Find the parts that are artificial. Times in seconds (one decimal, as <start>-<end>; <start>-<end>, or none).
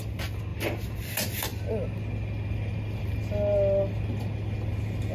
0.5-1.1